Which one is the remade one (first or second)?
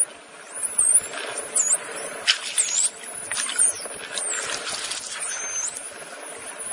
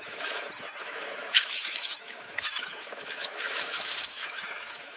second